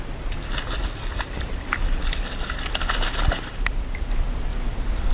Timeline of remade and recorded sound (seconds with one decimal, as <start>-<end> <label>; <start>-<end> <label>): 0.0-0.4 remade; 0.4-3.5 recorded; 3.5-4.5 remade; 4.5-5.1 recorded